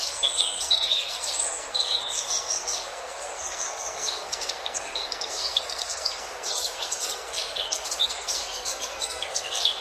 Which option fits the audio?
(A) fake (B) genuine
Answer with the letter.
A